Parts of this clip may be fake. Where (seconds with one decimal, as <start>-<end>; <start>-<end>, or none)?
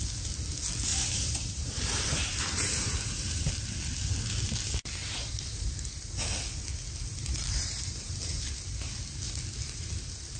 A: 0.9-3.5; 5.0-5.7; 7.1-8.4